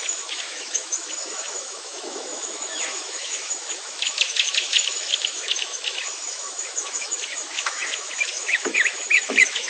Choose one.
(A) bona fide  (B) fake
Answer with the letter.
B